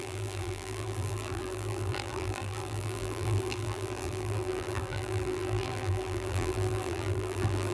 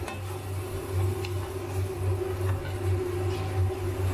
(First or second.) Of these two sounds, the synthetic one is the first